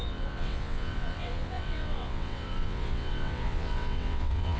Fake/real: fake